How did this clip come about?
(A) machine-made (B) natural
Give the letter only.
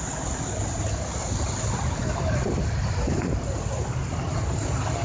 B